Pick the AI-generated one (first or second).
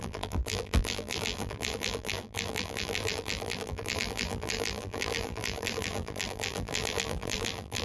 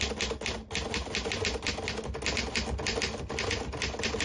first